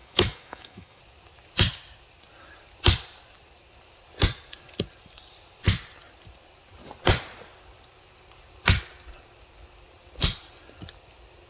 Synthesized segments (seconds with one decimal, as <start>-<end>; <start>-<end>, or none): 0.0-1.0